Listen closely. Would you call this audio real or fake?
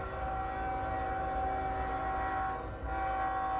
real